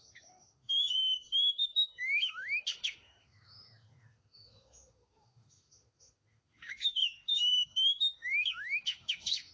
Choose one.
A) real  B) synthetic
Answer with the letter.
B